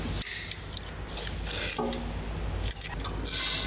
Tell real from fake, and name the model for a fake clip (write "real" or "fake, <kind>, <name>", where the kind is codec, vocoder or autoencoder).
real